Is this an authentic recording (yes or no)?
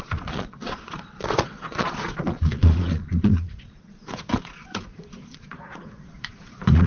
no